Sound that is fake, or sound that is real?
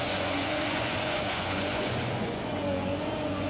fake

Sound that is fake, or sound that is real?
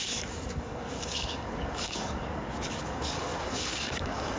fake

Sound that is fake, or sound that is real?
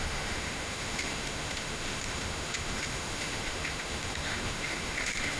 fake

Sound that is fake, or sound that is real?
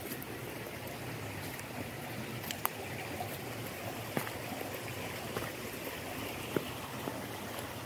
real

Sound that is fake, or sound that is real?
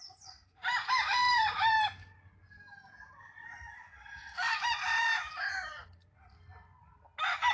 real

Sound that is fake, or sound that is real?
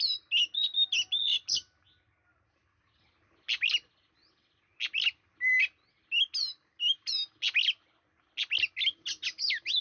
real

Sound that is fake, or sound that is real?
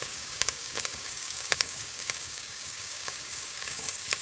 fake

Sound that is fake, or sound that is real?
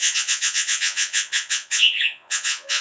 fake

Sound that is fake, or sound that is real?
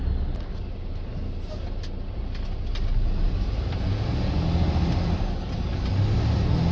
real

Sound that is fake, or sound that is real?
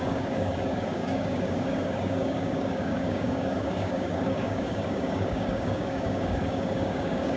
fake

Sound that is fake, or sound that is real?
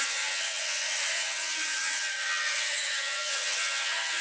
fake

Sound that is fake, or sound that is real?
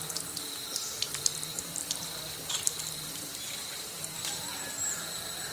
fake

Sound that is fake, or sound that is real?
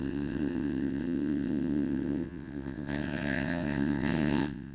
fake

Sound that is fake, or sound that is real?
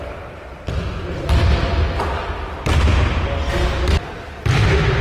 real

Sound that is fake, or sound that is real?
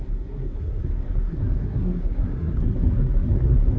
fake